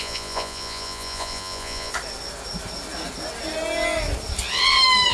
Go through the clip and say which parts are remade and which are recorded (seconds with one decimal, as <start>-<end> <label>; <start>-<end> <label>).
0.0-1.9 remade; 1.9-5.1 recorded